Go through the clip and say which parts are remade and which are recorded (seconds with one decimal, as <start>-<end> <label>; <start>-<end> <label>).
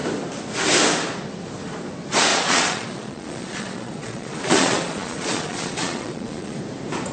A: 0.0-2.3 recorded; 2.3-6.6 remade; 6.6-7.1 recorded